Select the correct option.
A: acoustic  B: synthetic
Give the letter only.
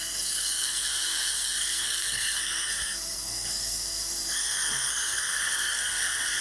B